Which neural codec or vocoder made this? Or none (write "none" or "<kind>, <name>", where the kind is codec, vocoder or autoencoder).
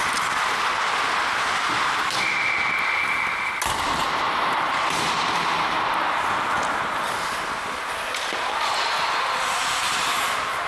none